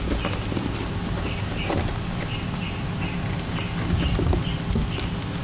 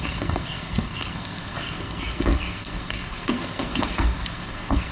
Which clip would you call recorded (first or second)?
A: first